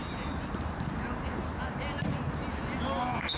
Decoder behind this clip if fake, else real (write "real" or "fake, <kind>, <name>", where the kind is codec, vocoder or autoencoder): real